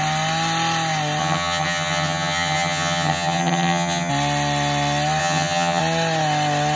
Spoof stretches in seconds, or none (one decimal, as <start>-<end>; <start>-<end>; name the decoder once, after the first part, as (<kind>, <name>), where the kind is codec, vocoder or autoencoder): 1.2-4.1 (vocoder, HiFi-GAN); 5.2-5.8